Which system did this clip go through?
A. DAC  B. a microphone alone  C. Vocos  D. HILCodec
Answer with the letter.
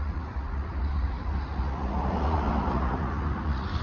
C